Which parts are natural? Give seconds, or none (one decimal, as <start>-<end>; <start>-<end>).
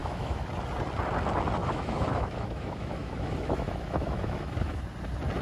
0.5-1.6; 4.8-5.4